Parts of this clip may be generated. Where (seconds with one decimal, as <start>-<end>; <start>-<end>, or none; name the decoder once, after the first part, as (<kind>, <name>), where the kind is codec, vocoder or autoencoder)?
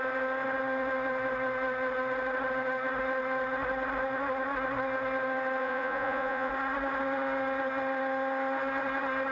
5.6-6.5 (vocoder, Vocos)